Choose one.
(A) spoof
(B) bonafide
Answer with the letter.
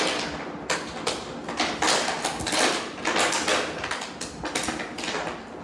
B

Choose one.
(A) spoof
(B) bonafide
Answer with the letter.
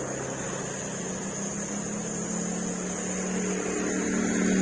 B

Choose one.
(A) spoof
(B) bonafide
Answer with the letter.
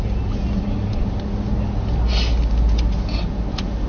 B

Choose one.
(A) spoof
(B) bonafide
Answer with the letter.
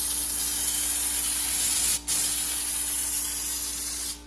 B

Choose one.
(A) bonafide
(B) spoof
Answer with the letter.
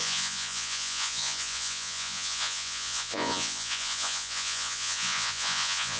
B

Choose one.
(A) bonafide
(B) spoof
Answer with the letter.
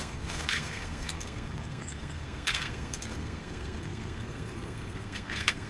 B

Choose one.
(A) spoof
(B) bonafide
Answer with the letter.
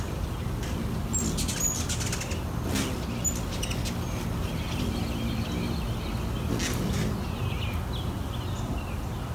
B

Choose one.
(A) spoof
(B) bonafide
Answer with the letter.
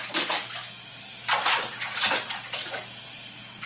B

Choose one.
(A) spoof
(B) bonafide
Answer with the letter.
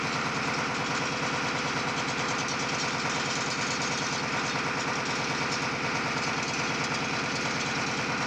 B